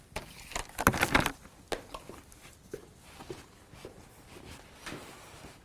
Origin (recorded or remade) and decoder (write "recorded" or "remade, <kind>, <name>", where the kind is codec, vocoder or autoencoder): recorded